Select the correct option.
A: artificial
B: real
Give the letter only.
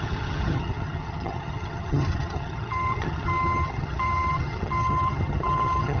A